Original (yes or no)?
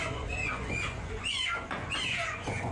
no